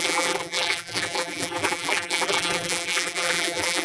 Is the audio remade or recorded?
remade